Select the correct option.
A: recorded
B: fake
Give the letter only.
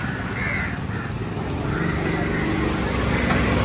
A